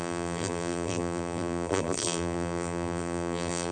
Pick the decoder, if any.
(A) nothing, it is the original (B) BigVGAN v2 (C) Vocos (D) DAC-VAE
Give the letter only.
B